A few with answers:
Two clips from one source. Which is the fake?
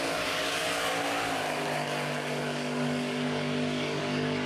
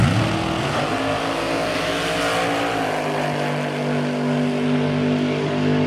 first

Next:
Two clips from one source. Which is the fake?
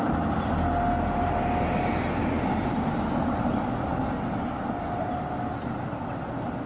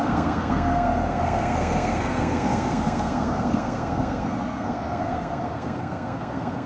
second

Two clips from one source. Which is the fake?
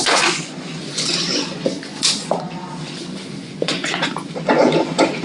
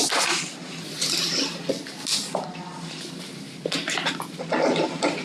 first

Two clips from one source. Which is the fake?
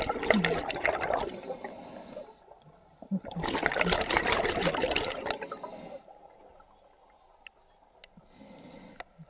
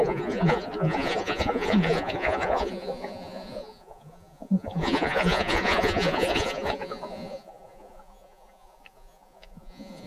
second